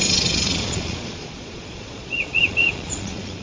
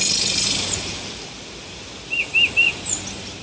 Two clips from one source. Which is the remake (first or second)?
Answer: first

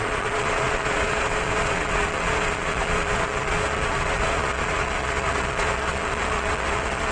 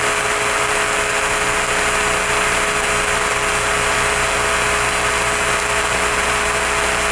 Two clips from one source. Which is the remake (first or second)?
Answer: first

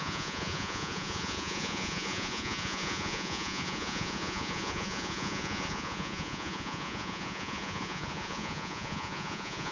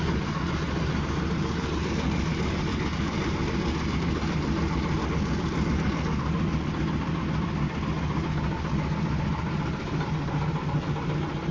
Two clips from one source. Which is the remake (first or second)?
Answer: first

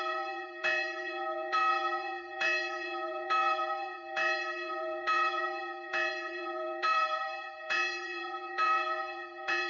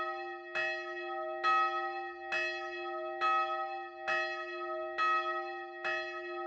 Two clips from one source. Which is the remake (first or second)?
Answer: first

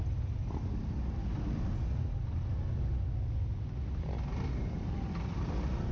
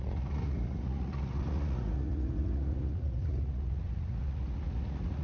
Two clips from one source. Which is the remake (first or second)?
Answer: second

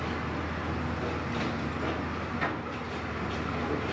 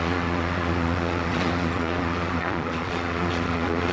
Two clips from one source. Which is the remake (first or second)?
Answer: second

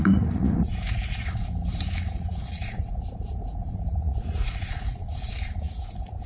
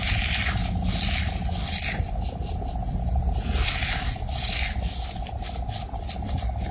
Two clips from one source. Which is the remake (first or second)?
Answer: first